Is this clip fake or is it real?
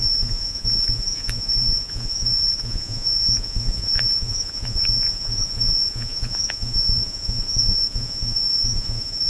fake